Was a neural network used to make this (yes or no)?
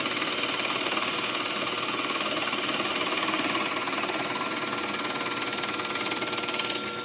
no